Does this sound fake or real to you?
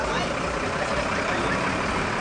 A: real